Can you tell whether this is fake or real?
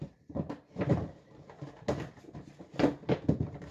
real